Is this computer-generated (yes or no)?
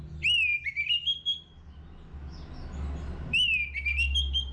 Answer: no